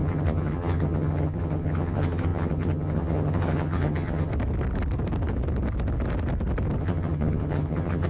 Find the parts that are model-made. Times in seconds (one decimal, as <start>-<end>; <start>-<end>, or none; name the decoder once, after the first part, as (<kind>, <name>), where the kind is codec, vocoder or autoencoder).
0.0-4.3 (vocoder, HiFi-GAN); 6.8-8.1